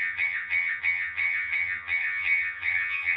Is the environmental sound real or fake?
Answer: fake